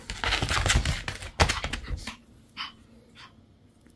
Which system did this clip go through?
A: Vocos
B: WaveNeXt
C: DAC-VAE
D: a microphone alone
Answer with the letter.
D